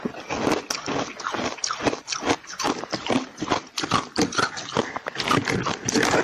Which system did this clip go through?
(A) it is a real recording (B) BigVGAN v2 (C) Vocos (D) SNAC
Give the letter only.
A